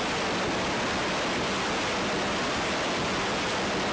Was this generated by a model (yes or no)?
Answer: no